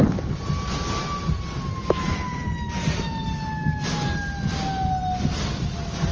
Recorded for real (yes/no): yes